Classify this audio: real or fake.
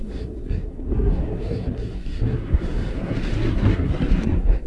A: fake